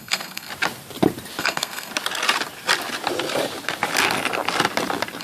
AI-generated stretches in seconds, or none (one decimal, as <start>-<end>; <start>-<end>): 0.0-0.5; 1.4-1.9